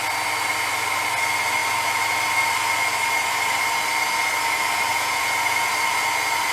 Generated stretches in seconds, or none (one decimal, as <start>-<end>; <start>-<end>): 4.9-5.7